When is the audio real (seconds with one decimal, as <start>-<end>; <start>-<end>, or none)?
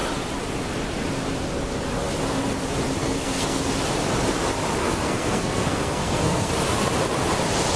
0.0-3.0; 3.6-4.8; 6.5-7.8